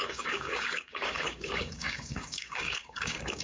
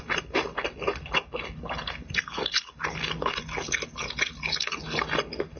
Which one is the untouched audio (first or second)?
second